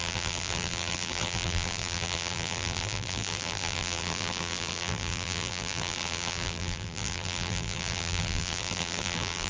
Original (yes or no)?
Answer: no